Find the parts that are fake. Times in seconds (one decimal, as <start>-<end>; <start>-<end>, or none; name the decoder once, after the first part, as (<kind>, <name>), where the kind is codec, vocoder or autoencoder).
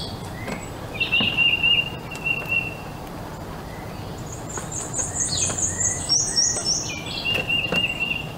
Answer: 0.0-6.6 (vocoder, BigVGAN v2); 7.4-8.4